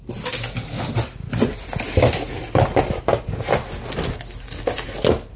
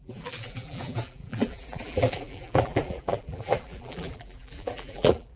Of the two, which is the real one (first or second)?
first